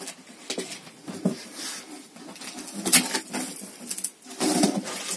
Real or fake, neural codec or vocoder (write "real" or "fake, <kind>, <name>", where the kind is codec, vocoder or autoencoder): real